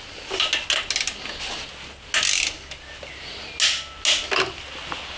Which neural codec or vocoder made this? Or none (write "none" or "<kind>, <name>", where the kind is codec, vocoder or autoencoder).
none